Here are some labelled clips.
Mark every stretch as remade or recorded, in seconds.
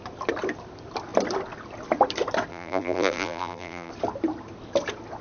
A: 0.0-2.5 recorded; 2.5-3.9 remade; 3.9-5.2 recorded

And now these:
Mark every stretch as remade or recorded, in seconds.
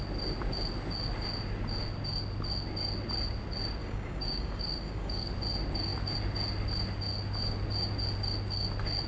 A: 0.0-3.8 recorded; 3.8-5.3 remade; 5.3-9.1 recorded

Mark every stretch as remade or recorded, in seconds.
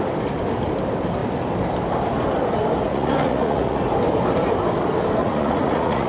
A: 0.0-2.9 recorded; 2.9-3.8 remade; 3.8-5.2 recorded; 5.2-6.1 remade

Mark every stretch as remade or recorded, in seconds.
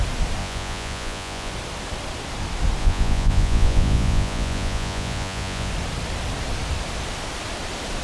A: 0.0-0.4 recorded; 0.4-1.5 remade; 1.5-2.8 recorded; 2.8-5.7 remade; 5.7-8.0 recorded